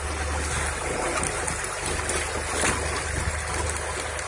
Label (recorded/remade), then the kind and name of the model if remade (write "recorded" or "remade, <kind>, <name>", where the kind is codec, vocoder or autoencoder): recorded